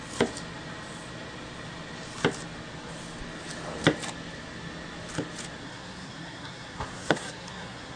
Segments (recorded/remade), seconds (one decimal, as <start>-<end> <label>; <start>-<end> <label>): 0.0-5.6 recorded; 5.6-8.0 remade